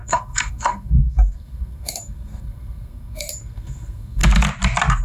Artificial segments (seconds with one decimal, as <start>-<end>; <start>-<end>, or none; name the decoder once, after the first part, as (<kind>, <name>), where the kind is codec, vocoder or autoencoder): 0.0-4.2 (codec, SNAC)